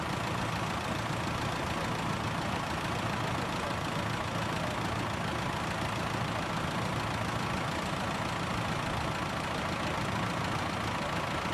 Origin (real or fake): real